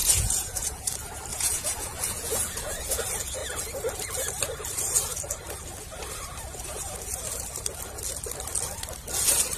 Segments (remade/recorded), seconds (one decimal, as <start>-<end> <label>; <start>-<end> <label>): 0.0-0.9 remade; 0.9-1.3 recorded; 1.3-3.0 remade; 3.0-9.6 recorded